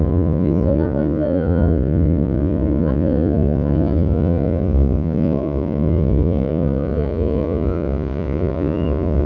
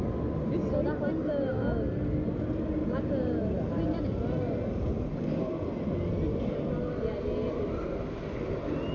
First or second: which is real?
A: second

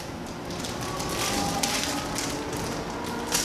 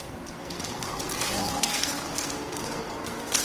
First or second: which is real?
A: first